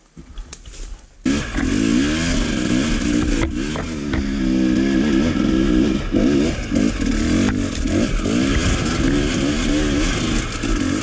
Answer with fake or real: real